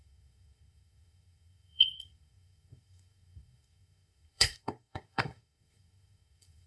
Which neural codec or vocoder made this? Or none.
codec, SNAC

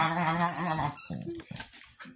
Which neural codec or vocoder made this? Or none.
none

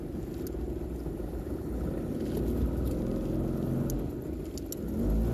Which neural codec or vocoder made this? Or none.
none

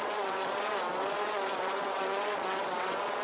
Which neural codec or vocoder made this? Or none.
vocoder, WaveNeXt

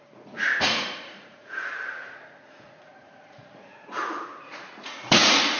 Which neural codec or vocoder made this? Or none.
vocoder, Vocos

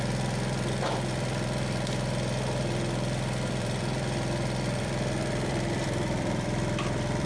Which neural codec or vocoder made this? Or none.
vocoder, BigVGAN v2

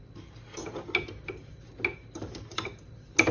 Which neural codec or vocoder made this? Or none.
none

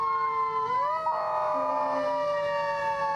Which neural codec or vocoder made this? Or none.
none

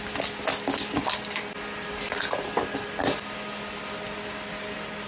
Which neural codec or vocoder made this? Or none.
none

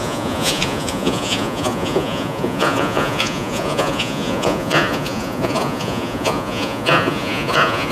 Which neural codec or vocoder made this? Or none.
vocoder, Vocos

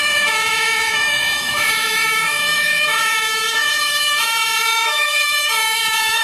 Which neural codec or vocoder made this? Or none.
autoencoder, DAC-VAE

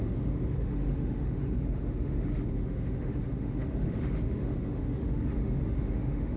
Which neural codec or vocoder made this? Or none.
autoencoder, DAC-VAE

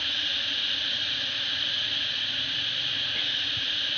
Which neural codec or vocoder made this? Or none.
vocoder, Vocos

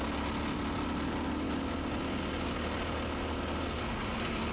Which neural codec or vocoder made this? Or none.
none